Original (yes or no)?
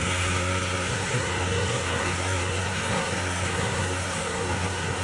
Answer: no